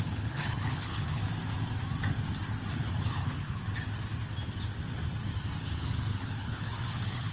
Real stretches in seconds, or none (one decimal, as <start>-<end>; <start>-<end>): 1.2-2.7; 3.6-5.6

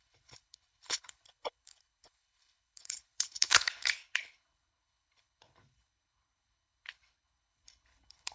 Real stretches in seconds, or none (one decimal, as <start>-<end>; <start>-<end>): none

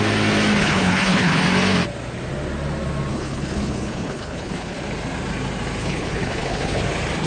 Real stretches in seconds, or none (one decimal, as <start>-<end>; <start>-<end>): 0.0-0.6; 1.4-3.1; 4.8-5.8; 6.8-7.3